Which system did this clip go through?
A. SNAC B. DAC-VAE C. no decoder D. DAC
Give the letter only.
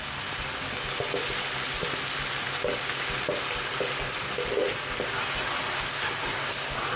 C